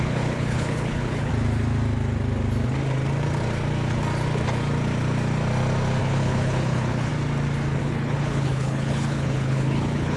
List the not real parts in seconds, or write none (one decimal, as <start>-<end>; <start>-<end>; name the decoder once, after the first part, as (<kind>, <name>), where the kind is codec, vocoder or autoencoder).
0.0-1.3 (codec, HILCodec); 6.0-7.1; 7.8-10.2

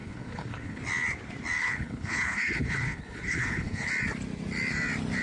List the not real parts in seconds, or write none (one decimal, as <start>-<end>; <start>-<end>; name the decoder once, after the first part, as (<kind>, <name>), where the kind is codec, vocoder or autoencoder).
0.0-0.8 (codec, HILCodec); 1.6-3.9

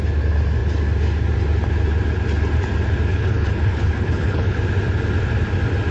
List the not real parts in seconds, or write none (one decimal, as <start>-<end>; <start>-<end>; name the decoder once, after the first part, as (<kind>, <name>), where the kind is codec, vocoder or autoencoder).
3.1-4.6 (codec, HILCodec)

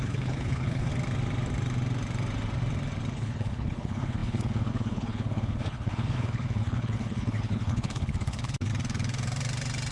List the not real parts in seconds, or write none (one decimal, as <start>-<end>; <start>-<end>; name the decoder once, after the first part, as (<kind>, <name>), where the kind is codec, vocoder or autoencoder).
0.0-0.9 (codec, HILCodec); 3.1-8.7